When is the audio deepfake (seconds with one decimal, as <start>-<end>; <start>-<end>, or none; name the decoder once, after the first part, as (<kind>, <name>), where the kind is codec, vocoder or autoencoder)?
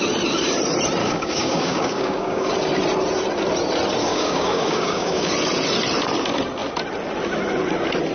1.0-2.5 (codec, DAC); 4.0-5.3